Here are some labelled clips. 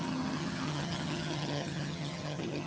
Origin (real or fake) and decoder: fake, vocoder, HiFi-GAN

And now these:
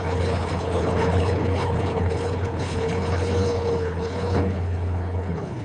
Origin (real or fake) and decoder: fake, codec, HILCodec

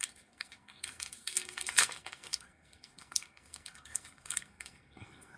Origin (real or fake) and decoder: fake, codec, SNAC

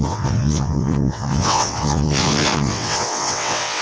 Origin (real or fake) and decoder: fake, vocoder, WaveNeXt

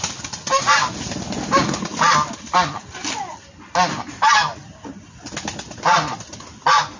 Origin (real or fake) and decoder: real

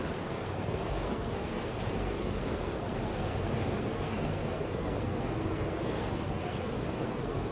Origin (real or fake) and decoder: fake, codec, SNAC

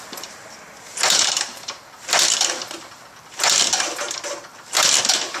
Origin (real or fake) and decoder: fake, vocoder, BigVGAN v2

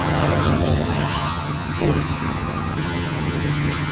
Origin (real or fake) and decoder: fake, vocoder, HiFi-GAN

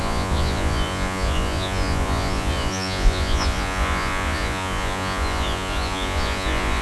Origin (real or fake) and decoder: fake, vocoder, Vocos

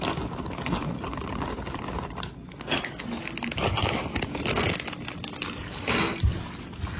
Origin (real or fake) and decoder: real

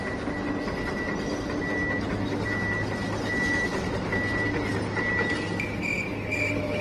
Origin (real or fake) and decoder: real